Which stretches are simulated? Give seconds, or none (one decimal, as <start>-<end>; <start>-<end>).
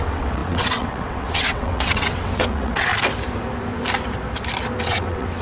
0.0-2.9; 4.8-5.4